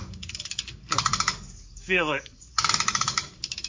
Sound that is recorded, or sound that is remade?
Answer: remade